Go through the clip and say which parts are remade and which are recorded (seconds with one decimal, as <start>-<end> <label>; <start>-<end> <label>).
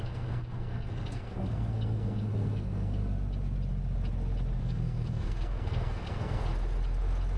0.0-3.0 remade; 3.0-4.6 recorded; 4.6-6.5 remade; 6.5-7.4 recorded